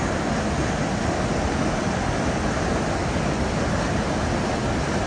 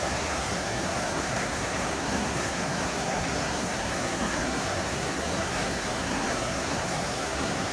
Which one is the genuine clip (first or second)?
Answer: first